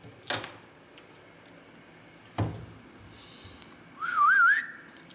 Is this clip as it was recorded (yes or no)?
yes